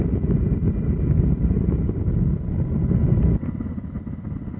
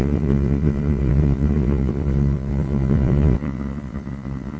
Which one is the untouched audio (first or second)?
first